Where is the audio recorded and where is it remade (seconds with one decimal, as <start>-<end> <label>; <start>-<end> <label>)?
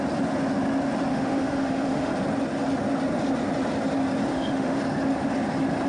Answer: 0.0-1.1 recorded; 1.1-2.1 remade; 2.1-4.3 recorded; 4.3-4.8 remade; 4.8-5.9 recorded